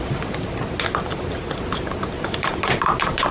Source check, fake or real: real